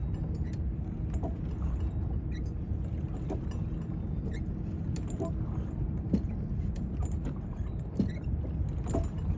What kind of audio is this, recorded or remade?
recorded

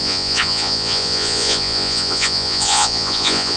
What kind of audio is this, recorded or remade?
remade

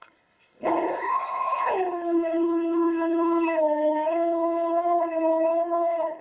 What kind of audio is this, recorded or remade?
remade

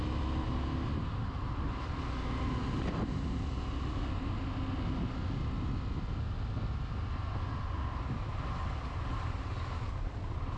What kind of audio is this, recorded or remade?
recorded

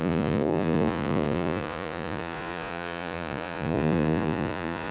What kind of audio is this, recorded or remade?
remade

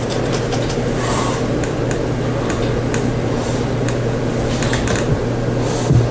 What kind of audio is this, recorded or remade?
recorded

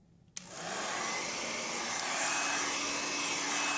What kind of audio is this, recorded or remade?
recorded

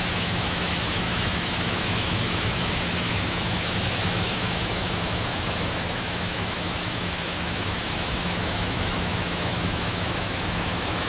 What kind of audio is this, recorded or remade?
remade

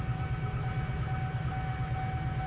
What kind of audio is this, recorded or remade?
recorded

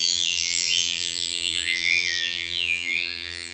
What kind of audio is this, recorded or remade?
remade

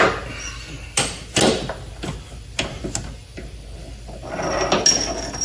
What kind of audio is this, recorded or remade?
recorded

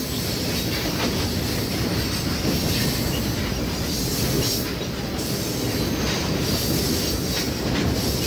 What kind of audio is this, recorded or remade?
recorded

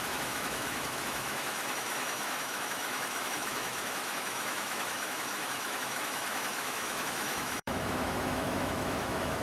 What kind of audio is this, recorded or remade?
remade